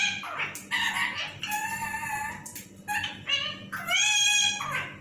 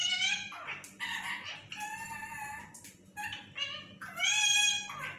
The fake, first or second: second